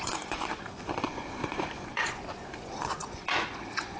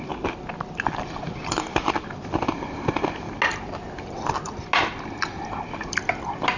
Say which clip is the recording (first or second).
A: second